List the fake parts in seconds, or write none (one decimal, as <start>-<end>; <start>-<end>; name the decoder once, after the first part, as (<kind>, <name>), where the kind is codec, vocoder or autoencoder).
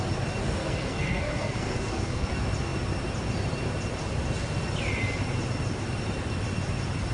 0.4-2.3 (codec, SNAC)